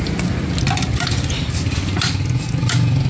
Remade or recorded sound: recorded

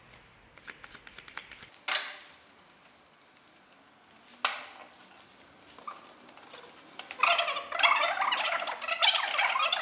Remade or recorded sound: recorded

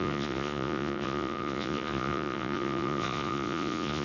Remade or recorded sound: remade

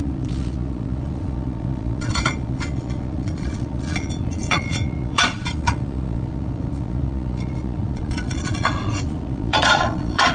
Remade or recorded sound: remade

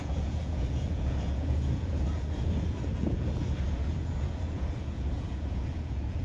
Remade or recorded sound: remade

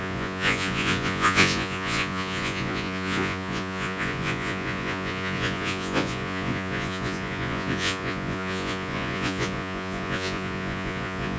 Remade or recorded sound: remade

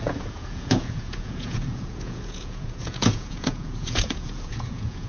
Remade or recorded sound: remade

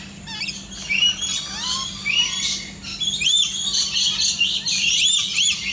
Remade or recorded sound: recorded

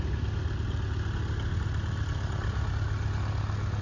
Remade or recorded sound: recorded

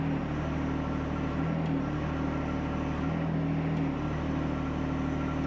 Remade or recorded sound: recorded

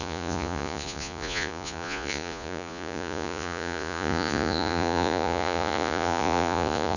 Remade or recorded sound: remade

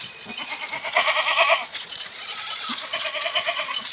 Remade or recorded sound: remade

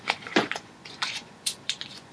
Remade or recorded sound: remade